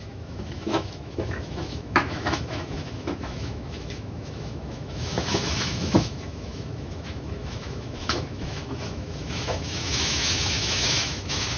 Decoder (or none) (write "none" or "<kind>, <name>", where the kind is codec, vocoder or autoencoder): autoencoder, DAC-VAE